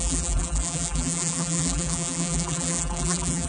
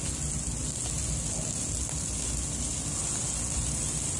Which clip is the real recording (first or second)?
second